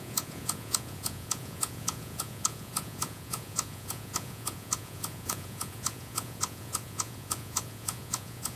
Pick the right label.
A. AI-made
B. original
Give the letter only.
A